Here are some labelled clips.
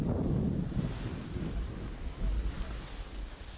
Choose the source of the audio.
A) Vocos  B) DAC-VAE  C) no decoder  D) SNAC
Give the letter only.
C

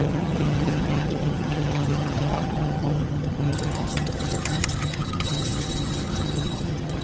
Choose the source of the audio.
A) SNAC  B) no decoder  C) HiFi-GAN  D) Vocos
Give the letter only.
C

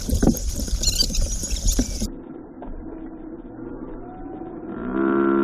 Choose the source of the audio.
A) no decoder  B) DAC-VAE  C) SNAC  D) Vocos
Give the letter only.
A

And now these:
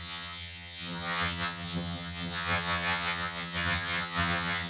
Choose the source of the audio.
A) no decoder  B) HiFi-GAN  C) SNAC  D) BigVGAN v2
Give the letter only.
B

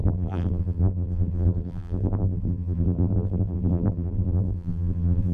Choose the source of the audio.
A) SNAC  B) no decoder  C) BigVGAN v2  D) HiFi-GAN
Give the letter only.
C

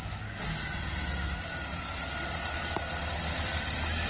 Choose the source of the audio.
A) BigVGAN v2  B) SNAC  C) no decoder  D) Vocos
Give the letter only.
C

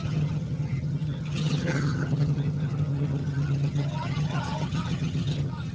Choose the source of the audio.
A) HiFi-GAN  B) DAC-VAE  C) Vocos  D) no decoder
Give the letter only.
A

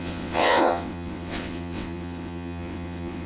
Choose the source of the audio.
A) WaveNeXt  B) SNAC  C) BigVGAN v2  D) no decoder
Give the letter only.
A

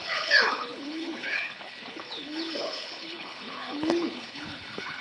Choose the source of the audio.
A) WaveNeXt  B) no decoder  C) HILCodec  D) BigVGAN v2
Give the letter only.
C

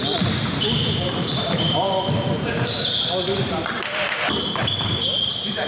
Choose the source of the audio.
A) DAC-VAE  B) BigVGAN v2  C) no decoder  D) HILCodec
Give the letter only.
B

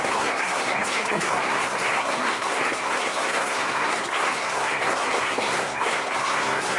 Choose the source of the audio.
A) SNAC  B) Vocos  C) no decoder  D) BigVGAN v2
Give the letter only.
A